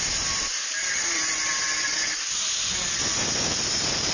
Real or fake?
fake